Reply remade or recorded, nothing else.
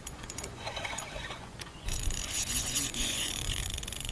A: remade